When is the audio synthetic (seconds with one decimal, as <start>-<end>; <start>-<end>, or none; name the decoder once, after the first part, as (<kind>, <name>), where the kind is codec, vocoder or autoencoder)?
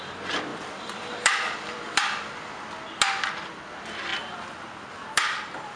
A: 0.5-2.6 (vocoder, BigVGAN v2); 4.1-5.8